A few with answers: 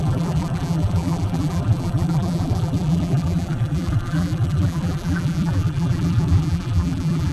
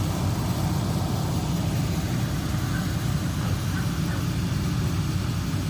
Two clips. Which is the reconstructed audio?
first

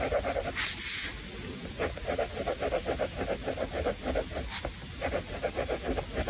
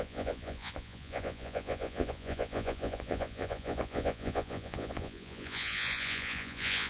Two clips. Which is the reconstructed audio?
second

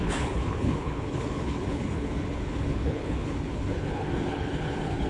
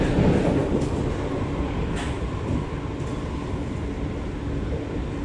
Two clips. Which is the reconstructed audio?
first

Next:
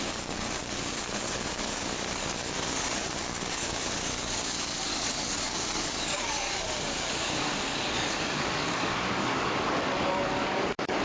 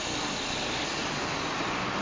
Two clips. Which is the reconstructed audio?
first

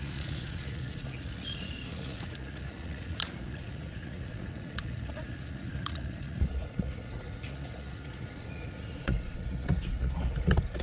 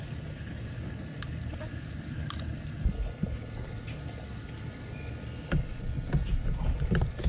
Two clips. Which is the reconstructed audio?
first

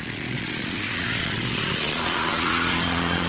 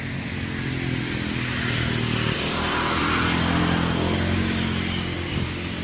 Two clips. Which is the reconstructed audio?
first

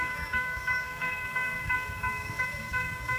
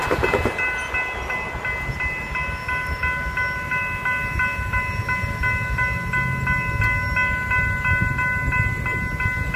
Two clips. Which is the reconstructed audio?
first